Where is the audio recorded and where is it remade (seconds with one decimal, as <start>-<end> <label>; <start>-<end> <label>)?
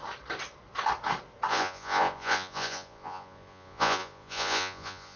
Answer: 0.0-1.5 recorded; 1.5-5.2 remade